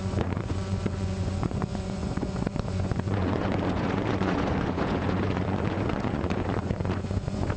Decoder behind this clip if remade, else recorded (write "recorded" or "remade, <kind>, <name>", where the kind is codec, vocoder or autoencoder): remade, vocoder, Vocos